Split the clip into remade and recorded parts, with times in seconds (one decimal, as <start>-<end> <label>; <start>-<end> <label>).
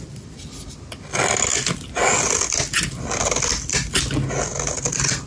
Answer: 0.0-5.3 recorded